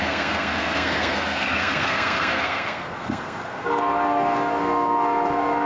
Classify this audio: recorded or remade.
remade